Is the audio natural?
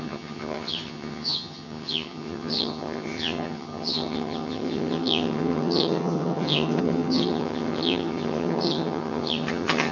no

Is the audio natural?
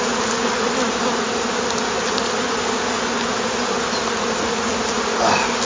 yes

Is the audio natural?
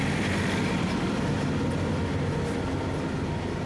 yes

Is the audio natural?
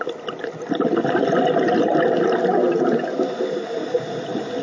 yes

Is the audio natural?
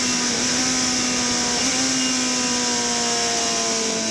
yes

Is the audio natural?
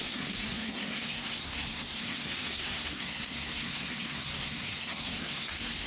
no